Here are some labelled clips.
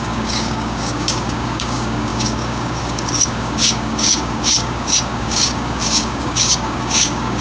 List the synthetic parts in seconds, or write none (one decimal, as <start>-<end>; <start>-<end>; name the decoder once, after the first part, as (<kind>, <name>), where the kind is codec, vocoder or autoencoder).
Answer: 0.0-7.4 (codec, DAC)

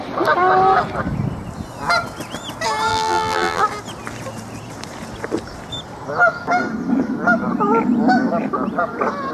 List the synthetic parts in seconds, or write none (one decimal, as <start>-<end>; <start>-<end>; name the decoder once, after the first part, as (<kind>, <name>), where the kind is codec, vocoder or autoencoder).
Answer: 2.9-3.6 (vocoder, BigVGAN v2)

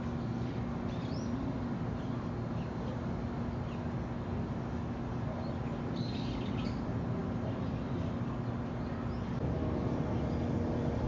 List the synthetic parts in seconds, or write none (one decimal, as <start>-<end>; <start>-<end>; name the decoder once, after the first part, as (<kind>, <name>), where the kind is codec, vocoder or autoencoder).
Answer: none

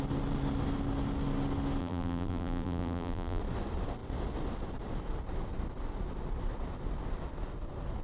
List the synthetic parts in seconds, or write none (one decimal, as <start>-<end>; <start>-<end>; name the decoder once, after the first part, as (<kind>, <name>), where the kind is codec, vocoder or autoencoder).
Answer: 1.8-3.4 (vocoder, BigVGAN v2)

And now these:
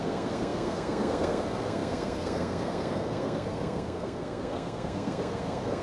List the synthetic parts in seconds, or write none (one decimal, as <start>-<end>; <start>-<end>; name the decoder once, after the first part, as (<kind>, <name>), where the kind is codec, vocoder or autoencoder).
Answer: 0.0-5.8 (codec, SNAC)

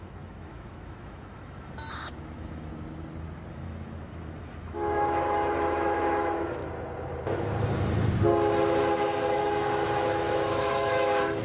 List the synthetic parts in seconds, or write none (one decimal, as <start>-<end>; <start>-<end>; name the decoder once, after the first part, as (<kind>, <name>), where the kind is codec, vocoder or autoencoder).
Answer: 0.0-2.7 (autoencoder, DAC-VAE); 3.5-6.6; 9.4-11.4